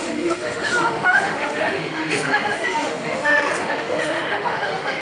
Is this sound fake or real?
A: fake